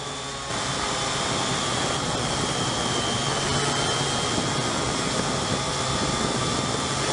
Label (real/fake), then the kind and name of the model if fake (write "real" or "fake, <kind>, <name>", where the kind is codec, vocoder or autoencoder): real